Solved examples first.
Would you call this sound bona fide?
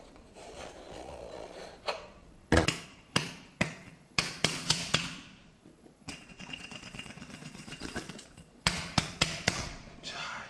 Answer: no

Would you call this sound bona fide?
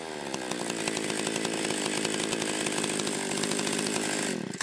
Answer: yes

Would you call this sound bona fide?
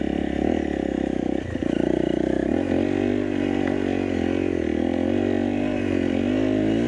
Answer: yes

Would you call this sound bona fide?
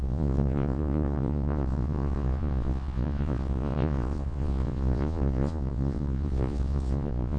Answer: no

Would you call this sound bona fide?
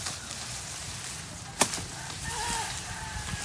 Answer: yes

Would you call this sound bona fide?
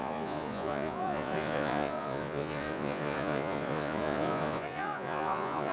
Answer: no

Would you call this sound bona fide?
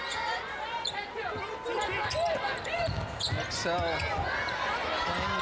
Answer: yes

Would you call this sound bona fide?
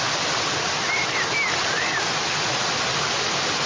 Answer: yes